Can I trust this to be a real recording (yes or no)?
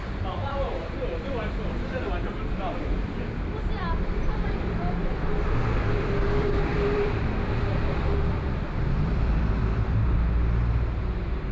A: no